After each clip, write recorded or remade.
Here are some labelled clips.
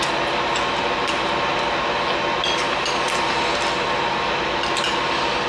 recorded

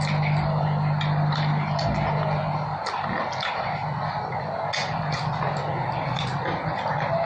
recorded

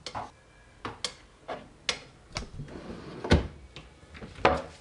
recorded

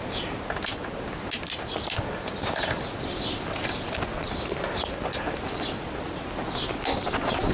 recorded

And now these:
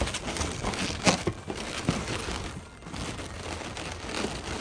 recorded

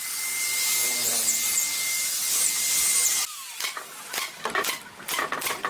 recorded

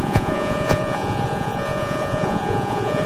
remade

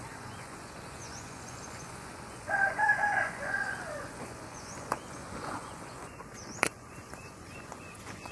remade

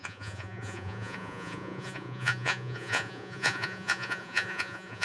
remade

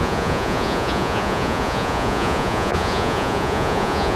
remade